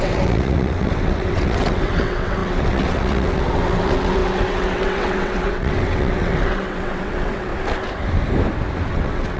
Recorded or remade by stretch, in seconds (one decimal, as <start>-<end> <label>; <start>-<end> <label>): 0.0-7.5 remade; 7.5-8.9 recorded; 8.9-9.4 remade